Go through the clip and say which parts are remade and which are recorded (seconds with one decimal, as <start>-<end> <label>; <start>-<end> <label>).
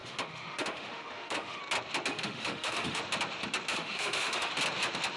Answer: 0.0-1.6 remade; 1.6-2.1 recorded; 2.1-3.0 remade; 3.0-3.7 recorded; 3.7-4.5 remade; 4.5-5.2 recorded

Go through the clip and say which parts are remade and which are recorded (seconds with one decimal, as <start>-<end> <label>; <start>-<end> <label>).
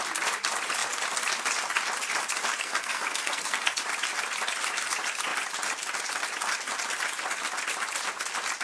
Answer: 0.0-2.5 recorded; 2.5-3.8 remade; 3.8-8.6 recorded